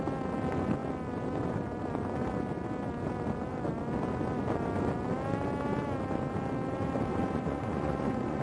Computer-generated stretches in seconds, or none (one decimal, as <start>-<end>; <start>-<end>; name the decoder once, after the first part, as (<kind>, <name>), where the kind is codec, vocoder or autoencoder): 7.1-8.4 (vocoder, Vocos)